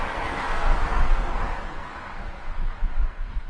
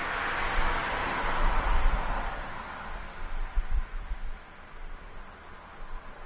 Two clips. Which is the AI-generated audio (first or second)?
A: first